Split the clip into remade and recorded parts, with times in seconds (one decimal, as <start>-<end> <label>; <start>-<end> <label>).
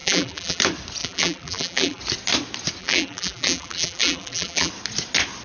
0.0-0.6 remade; 0.6-1.0 recorded; 1.0-2.0 remade; 2.0-2.8 recorded; 2.8-4.7 remade; 4.7-5.4 recorded